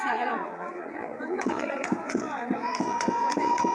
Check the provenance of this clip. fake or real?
fake